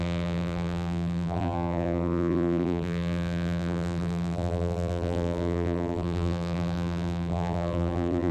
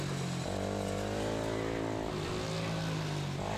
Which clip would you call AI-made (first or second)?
first